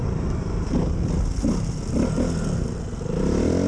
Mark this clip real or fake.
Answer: real